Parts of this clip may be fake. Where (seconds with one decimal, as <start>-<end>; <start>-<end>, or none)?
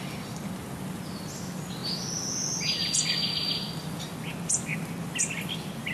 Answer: none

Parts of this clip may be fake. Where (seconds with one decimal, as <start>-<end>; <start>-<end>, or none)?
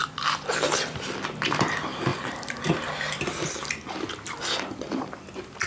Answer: 2.1-3.9